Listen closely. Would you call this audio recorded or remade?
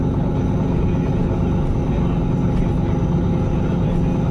recorded